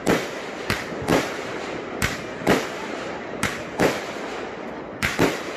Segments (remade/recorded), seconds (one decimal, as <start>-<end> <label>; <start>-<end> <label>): 0.0-1.1 recorded; 1.1-4.1 remade; 4.1-5.6 recorded